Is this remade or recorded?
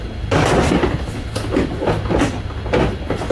recorded